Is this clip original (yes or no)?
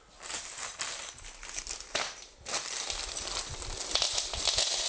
yes